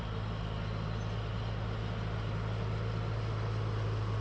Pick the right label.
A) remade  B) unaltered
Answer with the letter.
B